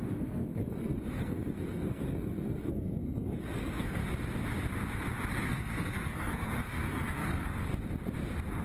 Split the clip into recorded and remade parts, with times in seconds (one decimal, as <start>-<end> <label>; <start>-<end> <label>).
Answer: 0.0-4.0 remade; 4.0-5.3 recorded; 5.3-7.7 remade; 7.7-8.6 recorded

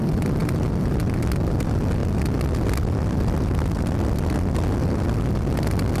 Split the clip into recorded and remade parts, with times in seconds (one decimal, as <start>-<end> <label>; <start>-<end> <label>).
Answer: 0.0-6.0 recorded